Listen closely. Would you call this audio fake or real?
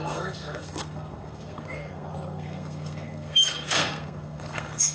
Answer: fake